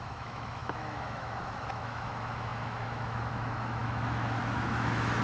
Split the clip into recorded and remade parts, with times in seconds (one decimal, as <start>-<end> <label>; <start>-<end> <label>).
0.0-5.2 remade